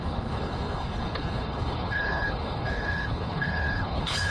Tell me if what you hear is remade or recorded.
remade